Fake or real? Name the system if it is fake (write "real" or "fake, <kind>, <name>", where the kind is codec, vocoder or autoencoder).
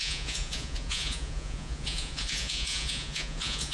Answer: fake, vocoder, Vocos